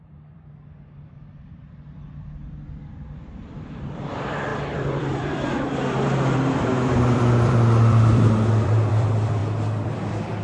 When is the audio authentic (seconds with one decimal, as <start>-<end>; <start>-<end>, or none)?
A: 1.6-2.9